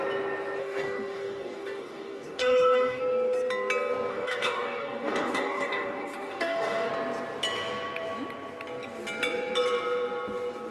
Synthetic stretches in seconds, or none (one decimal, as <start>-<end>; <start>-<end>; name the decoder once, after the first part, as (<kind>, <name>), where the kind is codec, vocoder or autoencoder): 0.6-3.0 (codec, DAC); 4.1-6.9